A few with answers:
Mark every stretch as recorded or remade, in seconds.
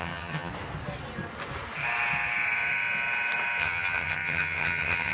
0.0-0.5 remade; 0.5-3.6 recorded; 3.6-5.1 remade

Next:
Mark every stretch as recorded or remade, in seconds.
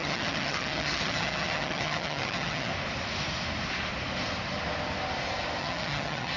0.0-2.7 remade; 2.7-5.6 recorded; 5.6-6.4 remade